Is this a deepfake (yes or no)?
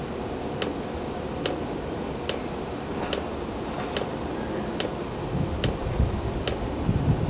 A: no